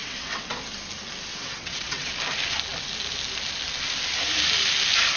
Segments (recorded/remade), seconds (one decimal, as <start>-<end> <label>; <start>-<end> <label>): 0.0-0.6 remade; 0.6-1.3 recorded; 1.3-2.1 remade; 2.1-5.2 recorded

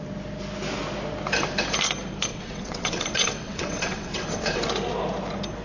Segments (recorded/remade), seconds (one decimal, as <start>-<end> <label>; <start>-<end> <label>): 0.0-2.3 recorded; 2.3-4.6 remade; 4.6-5.6 recorded

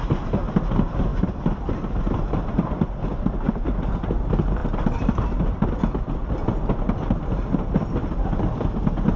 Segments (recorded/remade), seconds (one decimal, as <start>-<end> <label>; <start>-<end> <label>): 0.0-9.2 recorded

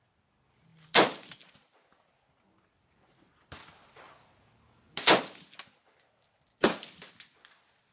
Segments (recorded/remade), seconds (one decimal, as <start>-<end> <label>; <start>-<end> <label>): 0.0-7.9 recorded

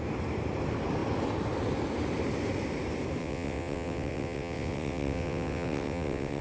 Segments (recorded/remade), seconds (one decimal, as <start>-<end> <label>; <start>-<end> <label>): 0.0-3.2 recorded; 3.2-6.4 remade

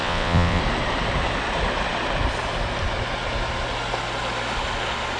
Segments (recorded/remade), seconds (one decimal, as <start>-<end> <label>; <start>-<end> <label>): 0.0-0.6 remade; 0.6-5.2 recorded

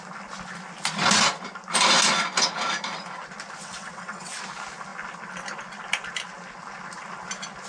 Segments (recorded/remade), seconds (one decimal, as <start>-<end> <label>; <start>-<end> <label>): 0.0-3.6 recorded; 3.6-4.4 remade; 4.4-7.7 recorded